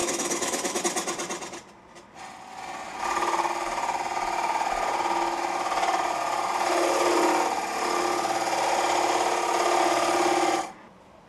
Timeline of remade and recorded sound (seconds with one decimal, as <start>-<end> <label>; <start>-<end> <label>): 0.0-0.8 remade; 0.8-11.3 recorded